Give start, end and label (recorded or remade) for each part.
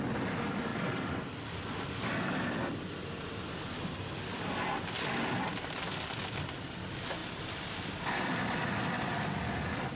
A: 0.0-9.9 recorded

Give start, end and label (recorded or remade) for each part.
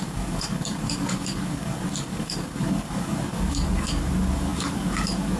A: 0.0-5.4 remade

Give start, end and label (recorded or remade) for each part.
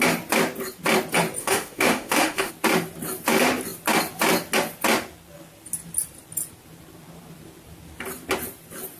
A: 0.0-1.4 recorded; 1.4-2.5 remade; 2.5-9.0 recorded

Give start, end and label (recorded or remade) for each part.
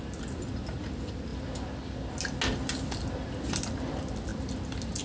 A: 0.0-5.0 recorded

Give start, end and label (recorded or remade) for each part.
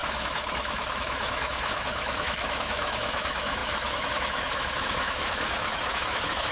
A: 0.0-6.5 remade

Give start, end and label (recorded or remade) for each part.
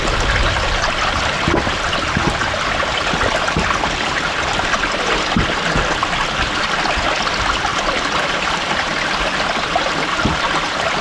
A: 0.0-7.7 recorded; 7.7-8.7 remade; 8.7-11.0 recorded